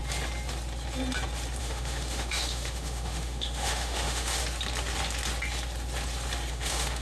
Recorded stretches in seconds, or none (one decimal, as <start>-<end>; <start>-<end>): 0.0-1.6; 4.4-6.5